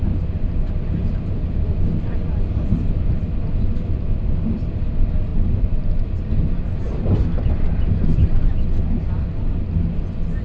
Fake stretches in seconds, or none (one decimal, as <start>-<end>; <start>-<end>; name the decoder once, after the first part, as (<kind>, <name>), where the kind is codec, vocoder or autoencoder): 1.0-3.2 (vocoder, BigVGAN v2); 5.3-7.4